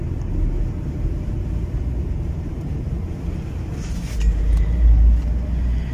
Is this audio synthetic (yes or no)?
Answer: no